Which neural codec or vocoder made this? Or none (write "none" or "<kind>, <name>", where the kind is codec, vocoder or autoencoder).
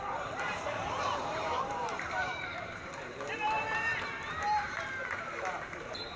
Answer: vocoder, BigVGAN v2